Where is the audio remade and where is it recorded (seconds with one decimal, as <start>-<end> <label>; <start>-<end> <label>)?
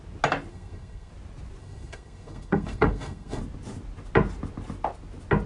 0.0-0.5 recorded; 0.5-1.1 remade; 1.1-1.6 recorded; 1.6-3.4 remade; 3.4-5.5 recorded